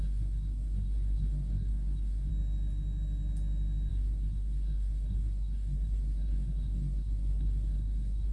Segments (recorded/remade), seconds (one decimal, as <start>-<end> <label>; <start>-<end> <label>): 0.0-2.3 remade; 2.3-3.9 recorded; 3.9-8.3 remade